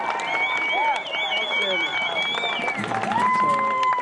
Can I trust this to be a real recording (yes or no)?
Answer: yes